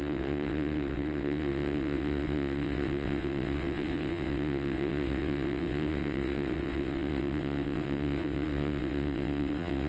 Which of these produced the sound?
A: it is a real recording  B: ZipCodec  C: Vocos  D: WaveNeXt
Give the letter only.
D